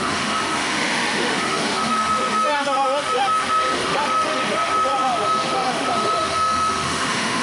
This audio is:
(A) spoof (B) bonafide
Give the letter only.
A